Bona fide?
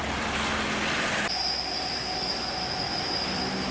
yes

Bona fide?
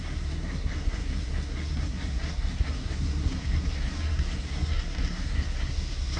no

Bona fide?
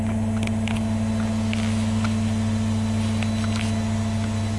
yes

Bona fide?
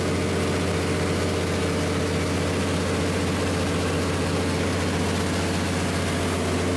yes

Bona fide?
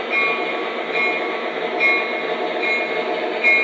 yes